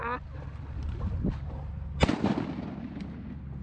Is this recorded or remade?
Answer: recorded